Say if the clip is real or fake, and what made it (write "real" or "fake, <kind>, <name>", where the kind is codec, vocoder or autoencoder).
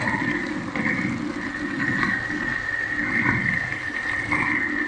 real